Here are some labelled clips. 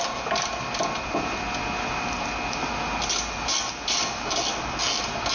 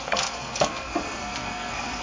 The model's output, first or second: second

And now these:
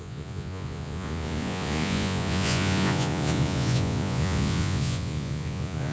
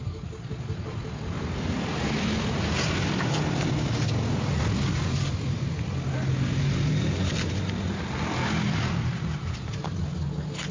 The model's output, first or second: first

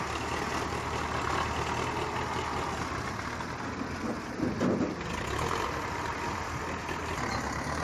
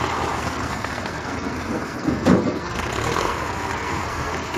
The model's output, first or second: second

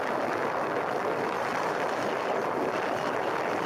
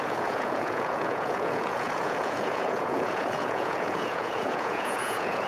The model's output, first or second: second